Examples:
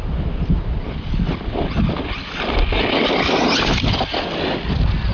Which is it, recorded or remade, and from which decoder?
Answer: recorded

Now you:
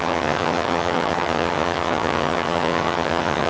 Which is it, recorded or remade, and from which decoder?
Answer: remade, vocoder, HiFi-GAN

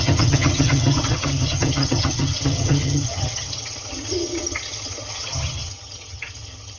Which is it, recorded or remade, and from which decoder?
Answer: remade, vocoder, HiFi-GAN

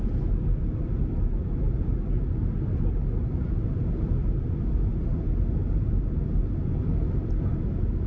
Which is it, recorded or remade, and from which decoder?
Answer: recorded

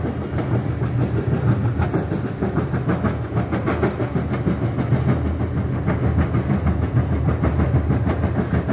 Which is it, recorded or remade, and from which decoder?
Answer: recorded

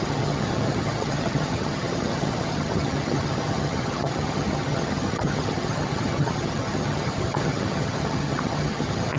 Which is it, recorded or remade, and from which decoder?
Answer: remade, vocoder, HiFi-GAN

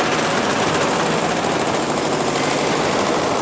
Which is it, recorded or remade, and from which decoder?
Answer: recorded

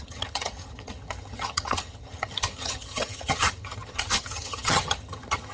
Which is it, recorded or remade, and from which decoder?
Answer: remade, vocoder, HiFi-GAN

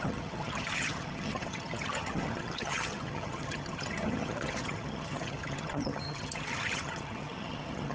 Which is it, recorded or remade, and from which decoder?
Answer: remade, vocoder, HiFi-GAN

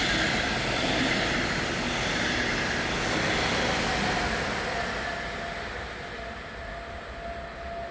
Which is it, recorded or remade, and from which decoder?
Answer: recorded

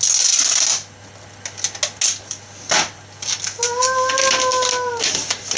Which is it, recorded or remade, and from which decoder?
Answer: recorded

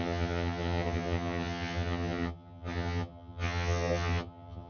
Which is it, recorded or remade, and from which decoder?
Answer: remade, vocoder, HiFi-GAN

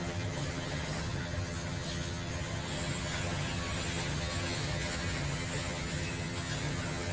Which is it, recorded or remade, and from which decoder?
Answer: remade, vocoder, HiFi-GAN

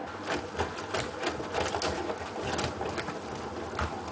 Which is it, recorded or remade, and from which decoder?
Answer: recorded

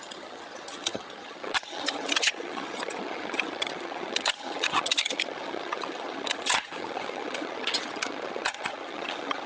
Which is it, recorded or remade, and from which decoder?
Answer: remade, vocoder, HiFi-GAN